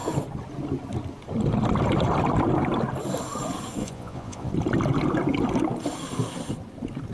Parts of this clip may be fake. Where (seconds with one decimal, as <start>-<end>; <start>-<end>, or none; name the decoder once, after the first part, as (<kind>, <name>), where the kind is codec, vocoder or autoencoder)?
3.8-4.5 (vocoder, Vocos)